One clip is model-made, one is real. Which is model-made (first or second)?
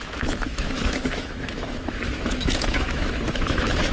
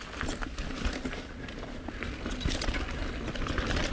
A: first